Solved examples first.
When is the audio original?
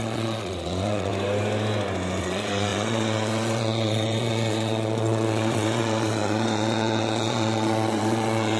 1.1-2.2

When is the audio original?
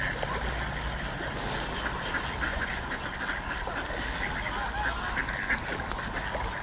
0.0-2.5; 3.0-6.6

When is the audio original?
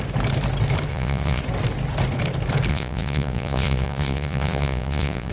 0.0-0.9; 1.4-2.7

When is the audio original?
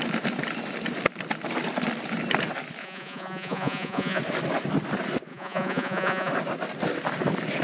0.0-2.8; 4.2-5.3; 6.3-7.6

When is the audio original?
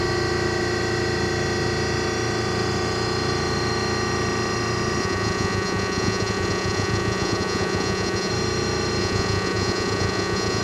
0.0-5.0; 8.3-9.0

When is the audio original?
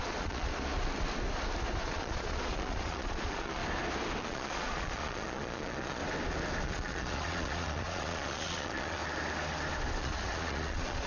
0.5-1.8; 3.6-4.2; 6.0-6.6; 9.0-10.0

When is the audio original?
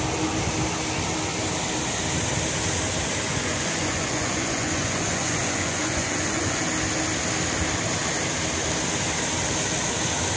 0.0-3.3; 6.6-10.4